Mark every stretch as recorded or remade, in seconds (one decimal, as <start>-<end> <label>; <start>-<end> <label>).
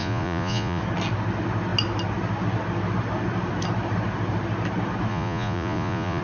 0.0-0.8 remade; 0.8-5.1 recorded; 5.1-6.2 remade